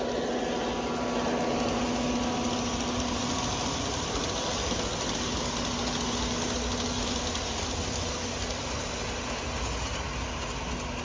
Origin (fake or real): real